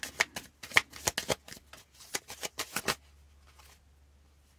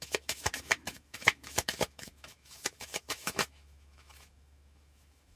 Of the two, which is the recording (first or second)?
first